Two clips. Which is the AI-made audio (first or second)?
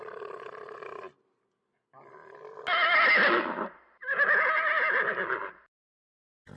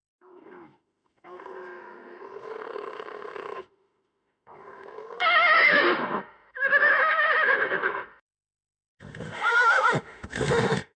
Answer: second